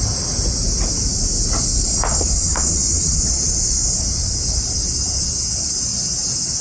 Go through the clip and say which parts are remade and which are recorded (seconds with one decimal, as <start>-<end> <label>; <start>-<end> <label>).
0.0-2.1 recorded; 2.1-3.5 remade; 3.5-6.6 recorded